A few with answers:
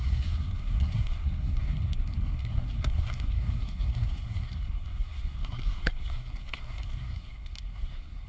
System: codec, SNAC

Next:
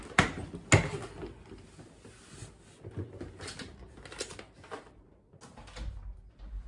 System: none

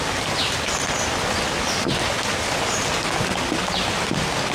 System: none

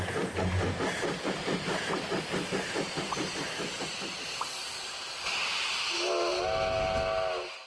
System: none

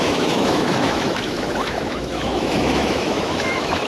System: autoencoder, DAC-VAE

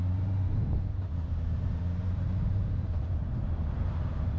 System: vocoder, BigVGAN v2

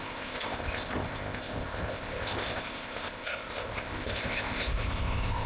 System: codec, ZipCodec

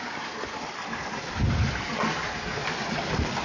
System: none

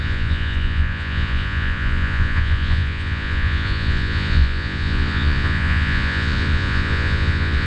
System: vocoder, Vocos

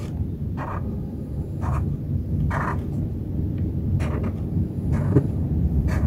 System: none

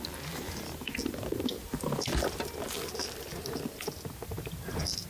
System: none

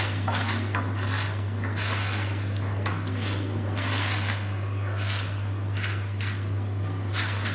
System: codec, SNAC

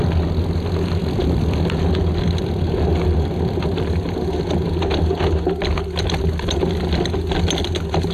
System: none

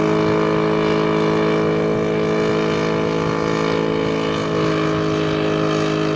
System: none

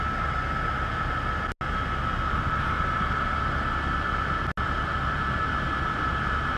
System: none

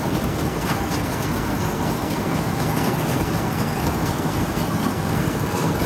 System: codec, SNAC